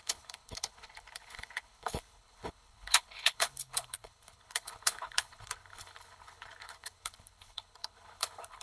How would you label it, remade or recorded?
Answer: remade